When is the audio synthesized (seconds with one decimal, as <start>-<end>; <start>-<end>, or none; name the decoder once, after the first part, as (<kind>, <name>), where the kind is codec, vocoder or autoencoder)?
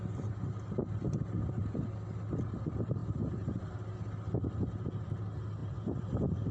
3.0-3.6 (vocoder, BigVGAN v2); 5.6-6.5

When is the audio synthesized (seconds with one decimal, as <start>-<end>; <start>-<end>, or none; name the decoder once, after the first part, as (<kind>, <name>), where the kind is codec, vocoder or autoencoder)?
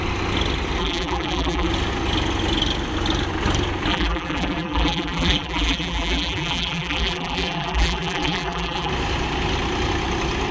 0.8-1.7 (vocoder, BigVGAN v2); 3.9-8.9